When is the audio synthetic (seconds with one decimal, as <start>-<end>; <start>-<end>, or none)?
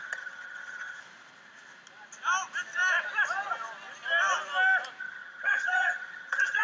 0.0-1.0; 5.0-6.6